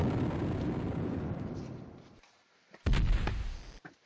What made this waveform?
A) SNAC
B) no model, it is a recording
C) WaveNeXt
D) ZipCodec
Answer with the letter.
B